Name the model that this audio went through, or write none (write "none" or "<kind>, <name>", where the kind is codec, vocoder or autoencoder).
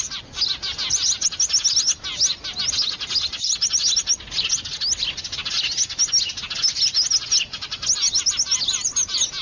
none